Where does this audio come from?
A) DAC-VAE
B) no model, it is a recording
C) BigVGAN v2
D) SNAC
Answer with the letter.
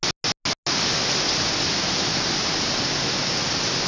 B